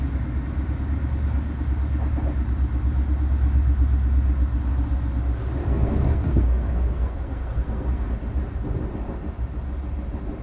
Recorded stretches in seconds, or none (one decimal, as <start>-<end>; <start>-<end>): 0.0-5.6; 8.1-10.4